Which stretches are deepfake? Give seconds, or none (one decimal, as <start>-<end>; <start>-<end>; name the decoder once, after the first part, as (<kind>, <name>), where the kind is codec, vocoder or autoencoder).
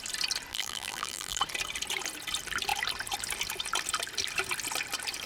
0.5-1.4 (vocoder, BigVGAN v2)